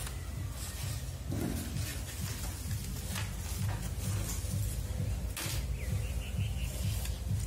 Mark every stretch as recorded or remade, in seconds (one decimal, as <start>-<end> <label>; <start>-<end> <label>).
0.0-7.5 recorded

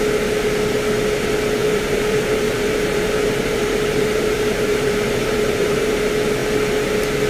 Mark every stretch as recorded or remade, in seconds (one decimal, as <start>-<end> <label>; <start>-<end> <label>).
0.0-1.6 recorded; 1.6-6.0 remade; 6.0-7.3 recorded

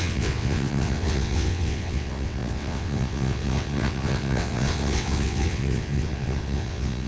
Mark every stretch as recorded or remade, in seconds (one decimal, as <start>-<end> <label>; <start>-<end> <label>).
0.0-7.1 remade

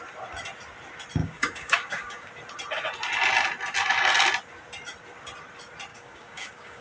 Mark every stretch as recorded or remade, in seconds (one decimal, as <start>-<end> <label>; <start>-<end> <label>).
0.0-1.2 recorded; 1.2-2.3 remade; 2.3-5.9 recorded; 5.9-6.8 remade

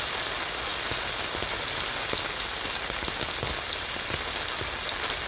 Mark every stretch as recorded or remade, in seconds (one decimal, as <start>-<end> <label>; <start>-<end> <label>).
0.0-5.3 recorded

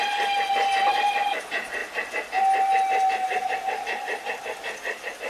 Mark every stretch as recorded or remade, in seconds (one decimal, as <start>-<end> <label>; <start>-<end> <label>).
0.0-5.3 recorded

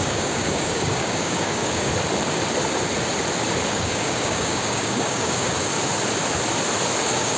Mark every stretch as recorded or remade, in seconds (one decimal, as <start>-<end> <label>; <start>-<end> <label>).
0.0-1.9 remade; 1.9-3.7 recorded; 3.7-5.7 remade; 5.7-7.0 recorded; 7.0-7.4 remade

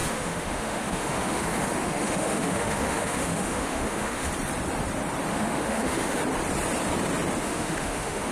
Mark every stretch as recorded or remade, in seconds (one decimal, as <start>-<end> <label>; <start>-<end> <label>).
0.0-4.3 remade; 4.3-5.3 recorded; 5.3-6.2 remade; 6.2-7.4 recorded; 7.4-8.3 remade